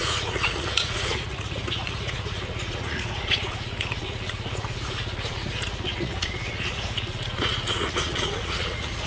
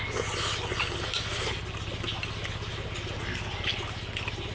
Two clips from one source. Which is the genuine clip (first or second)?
second